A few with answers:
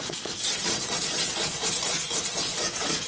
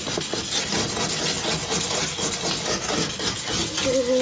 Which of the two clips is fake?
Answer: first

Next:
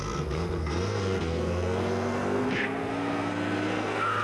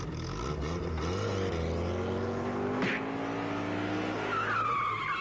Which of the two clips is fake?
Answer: first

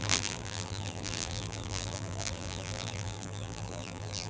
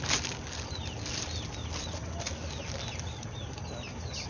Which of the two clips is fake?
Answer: first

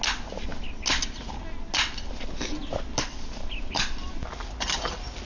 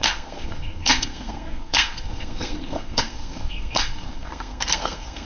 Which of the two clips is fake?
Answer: second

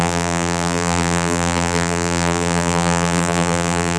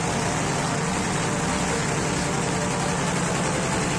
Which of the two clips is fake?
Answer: first